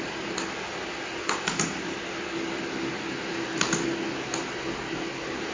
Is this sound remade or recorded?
recorded